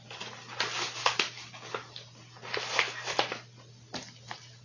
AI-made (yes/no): no